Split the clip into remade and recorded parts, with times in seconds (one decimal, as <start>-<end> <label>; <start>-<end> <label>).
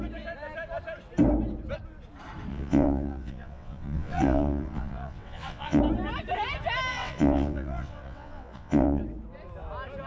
0.0-2.5 recorded; 2.5-5.8 remade; 5.8-6.9 recorded; 6.9-9.0 remade; 9.0-10.1 recorded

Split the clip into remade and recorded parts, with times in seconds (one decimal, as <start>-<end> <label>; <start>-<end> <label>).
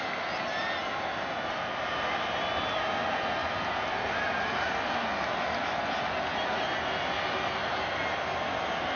0.0-9.0 recorded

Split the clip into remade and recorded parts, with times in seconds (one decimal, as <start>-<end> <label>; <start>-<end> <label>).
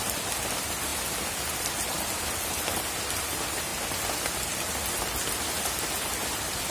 0.0-6.7 recorded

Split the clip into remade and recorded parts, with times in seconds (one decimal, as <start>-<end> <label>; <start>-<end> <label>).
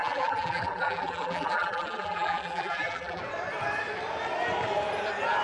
0.0-3.2 remade; 3.2-5.4 recorded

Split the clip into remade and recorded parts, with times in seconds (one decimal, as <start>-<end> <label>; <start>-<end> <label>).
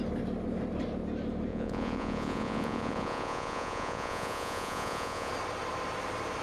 0.0-1.5 recorded; 1.5-5.3 remade; 5.3-6.4 recorded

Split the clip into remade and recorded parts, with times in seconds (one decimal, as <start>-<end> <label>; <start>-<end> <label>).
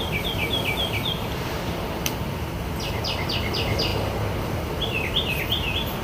0.0-0.4 recorded; 0.4-2.5 remade; 2.5-6.0 recorded